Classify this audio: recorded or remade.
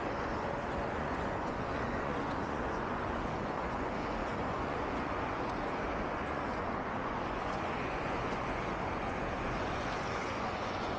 remade